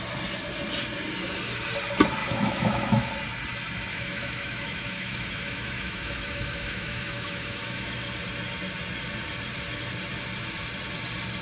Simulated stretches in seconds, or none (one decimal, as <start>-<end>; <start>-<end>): 2.2-3.1; 3.9-7.9